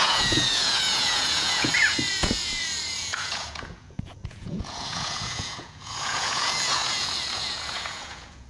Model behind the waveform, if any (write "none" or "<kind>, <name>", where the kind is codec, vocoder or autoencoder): vocoder, Vocos